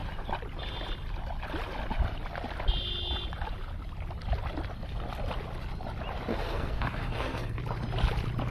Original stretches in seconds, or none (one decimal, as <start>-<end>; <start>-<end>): 0.0-6.3; 7.6-8.5